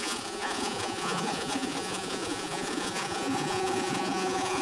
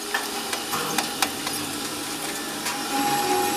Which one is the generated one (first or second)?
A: first